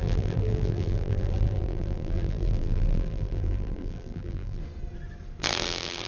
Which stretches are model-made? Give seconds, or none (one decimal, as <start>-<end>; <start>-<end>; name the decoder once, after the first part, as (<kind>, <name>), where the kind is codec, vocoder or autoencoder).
0.0-4.6 (vocoder, BigVGAN v2); 5.4-6.1